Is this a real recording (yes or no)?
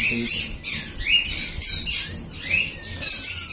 yes